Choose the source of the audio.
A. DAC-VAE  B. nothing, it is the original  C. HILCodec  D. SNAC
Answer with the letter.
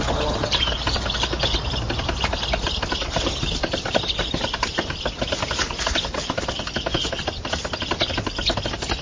B